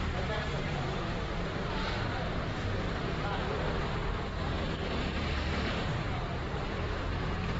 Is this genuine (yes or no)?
no